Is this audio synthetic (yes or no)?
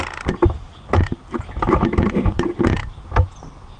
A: no